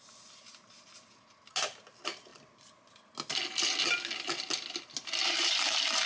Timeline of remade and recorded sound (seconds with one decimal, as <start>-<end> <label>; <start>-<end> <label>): 0.0-6.1 recorded